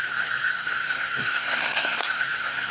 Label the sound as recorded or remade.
remade